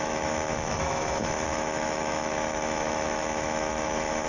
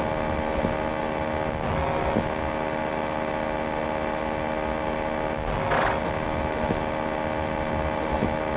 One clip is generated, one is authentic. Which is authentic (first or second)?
second